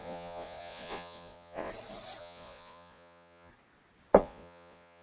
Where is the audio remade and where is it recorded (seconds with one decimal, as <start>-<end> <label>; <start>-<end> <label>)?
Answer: 0.0-1.7 remade; 1.7-2.2 recorded; 2.2-3.5 remade; 3.5-4.2 recorded; 4.2-5.0 remade